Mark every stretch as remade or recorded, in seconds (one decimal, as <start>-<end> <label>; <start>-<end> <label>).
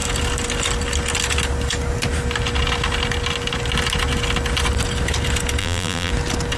0.0-5.6 recorded; 5.6-6.1 remade; 6.1-6.6 recorded